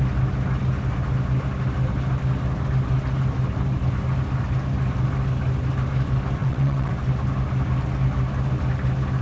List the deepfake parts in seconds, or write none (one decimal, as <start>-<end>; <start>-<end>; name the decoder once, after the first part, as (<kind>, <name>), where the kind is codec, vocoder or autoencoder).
6.4-6.9 (vocoder, WaveNeXt)